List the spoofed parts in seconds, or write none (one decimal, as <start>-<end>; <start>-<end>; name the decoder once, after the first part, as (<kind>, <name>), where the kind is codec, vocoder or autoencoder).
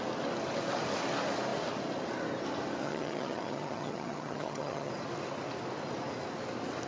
2.8-4.9 (vocoder, HiFi-GAN)